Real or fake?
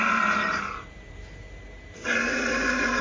fake